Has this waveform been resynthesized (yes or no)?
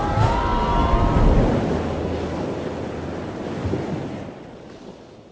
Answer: no